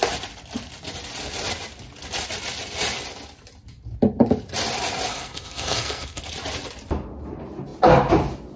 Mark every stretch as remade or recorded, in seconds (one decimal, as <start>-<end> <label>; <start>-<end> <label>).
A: 0.0-5.1 recorded; 5.1-6.2 remade; 6.2-8.6 recorded